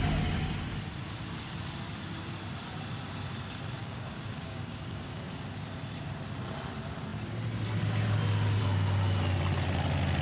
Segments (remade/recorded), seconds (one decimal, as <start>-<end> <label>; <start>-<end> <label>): 0.0-3.8 recorded; 3.8-5.3 remade; 5.3-10.2 recorded